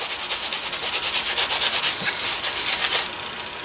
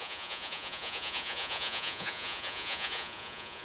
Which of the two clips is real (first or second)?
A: first